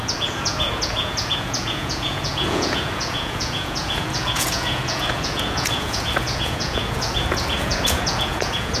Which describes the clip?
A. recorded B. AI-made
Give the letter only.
B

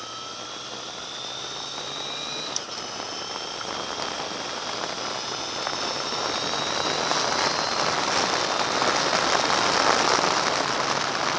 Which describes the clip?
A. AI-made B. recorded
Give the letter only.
B